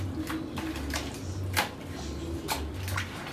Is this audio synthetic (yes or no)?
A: no